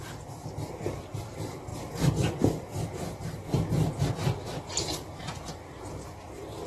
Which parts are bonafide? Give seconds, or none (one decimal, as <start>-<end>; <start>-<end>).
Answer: 0.0-6.7